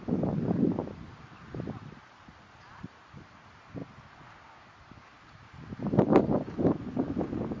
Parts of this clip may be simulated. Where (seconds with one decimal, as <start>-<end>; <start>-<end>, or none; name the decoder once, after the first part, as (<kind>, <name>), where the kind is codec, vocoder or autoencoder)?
none